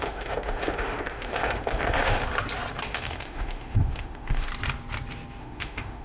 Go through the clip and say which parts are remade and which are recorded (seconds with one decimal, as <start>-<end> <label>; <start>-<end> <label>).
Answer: 0.0-2.2 remade; 2.2-2.9 recorded; 2.9-4.5 remade; 4.5-5.4 recorded; 5.4-6.0 remade